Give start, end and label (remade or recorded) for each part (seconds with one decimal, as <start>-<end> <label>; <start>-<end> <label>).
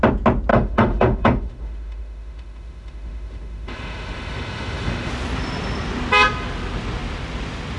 0.0-0.5 recorded; 0.5-5.1 remade; 5.1-7.8 recorded